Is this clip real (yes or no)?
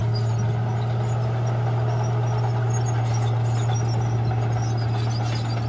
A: yes